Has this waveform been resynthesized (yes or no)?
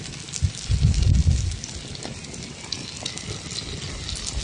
no